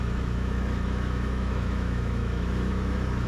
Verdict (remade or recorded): remade